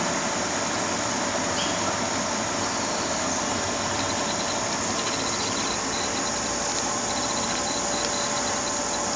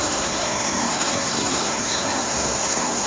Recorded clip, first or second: first